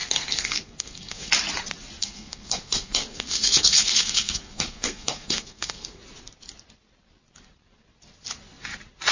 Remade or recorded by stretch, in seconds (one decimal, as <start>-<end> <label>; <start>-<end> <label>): 0.0-1.3 remade; 1.3-2.0 recorded; 2.0-6.0 remade; 6.0-9.1 recorded